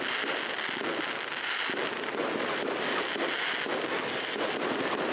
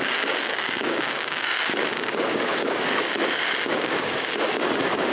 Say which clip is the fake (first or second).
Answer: second